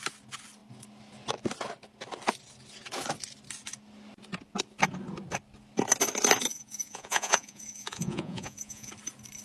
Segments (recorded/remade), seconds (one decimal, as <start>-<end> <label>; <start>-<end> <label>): 0.0-6.5 recorded; 6.5-8.9 remade; 8.9-9.4 recorded